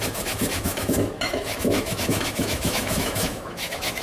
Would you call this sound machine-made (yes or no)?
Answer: yes